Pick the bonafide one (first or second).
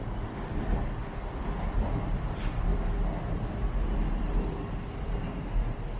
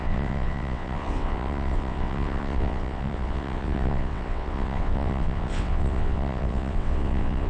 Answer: first